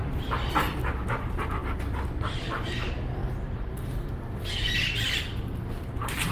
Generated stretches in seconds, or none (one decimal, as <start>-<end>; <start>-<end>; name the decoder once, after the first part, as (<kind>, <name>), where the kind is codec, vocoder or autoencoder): none